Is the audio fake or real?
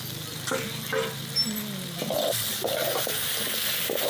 real